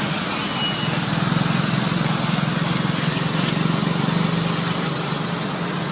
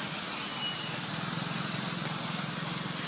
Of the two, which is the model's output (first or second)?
second